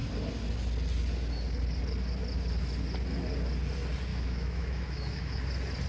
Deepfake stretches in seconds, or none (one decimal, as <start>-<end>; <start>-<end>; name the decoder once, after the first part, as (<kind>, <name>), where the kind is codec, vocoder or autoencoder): 4.1-5.4 (autoencoder, DAC-VAE)